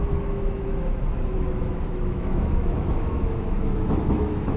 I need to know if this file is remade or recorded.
remade